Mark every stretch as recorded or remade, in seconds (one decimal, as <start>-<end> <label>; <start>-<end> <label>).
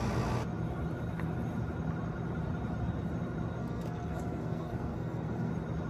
0.0-3.6 recorded; 3.6-5.5 remade; 5.5-5.9 recorded